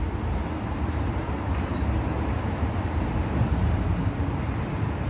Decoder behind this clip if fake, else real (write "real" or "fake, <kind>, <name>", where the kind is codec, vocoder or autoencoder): fake, vocoder, BigVGAN v2